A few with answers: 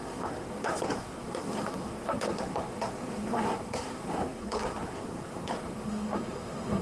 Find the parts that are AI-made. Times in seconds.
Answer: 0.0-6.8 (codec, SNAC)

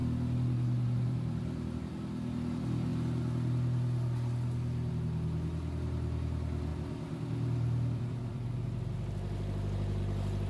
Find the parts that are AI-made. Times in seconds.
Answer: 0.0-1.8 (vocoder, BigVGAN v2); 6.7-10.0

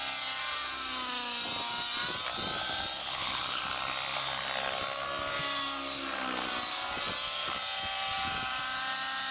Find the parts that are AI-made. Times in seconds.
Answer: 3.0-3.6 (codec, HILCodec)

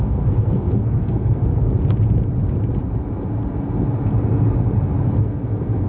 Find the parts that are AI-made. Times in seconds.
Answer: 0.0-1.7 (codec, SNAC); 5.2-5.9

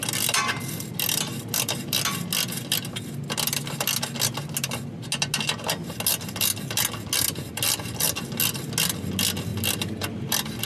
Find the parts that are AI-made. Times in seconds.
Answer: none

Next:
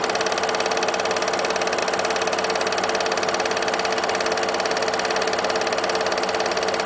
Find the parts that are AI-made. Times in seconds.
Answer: none

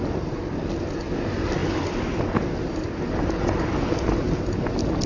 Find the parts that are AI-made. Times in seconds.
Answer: none